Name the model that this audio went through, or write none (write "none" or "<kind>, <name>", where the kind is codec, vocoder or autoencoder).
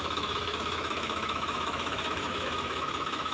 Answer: autoencoder, DAC-VAE